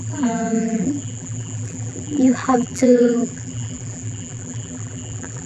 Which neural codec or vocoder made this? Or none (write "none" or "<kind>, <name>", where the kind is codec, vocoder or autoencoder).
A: vocoder, BigVGAN v2